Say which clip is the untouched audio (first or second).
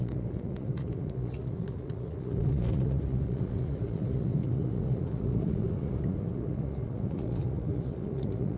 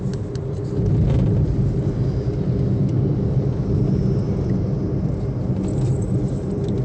second